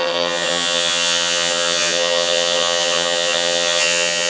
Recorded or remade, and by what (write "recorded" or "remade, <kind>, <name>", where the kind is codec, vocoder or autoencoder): remade, vocoder, HiFi-GAN